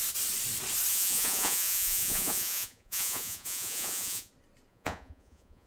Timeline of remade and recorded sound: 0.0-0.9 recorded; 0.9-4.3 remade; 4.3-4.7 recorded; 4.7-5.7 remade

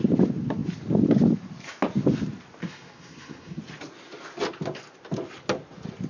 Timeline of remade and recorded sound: 0.0-2.6 recorded; 2.6-3.6 remade; 3.6-6.1 recorded